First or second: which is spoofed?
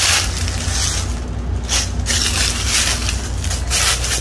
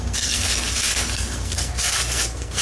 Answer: second